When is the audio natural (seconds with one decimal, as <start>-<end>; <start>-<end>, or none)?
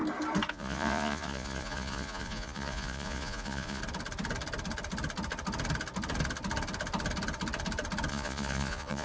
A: 0.0-0.5; 3.8-8.1